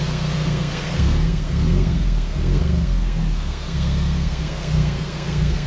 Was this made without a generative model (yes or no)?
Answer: no